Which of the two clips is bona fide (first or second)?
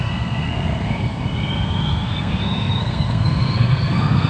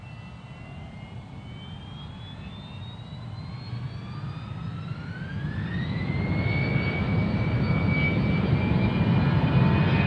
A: second